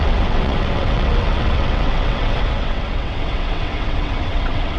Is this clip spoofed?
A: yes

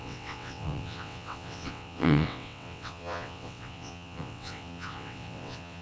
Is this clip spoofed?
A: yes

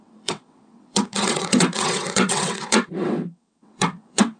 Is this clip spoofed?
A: yes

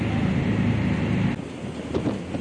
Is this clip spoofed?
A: no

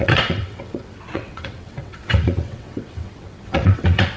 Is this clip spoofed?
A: yes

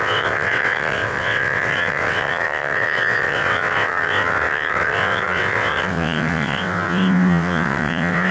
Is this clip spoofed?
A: yes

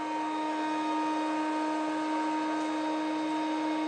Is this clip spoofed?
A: no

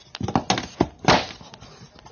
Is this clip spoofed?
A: no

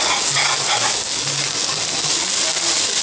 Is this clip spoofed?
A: no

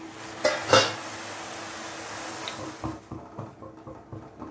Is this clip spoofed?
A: no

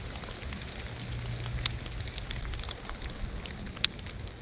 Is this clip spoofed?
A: no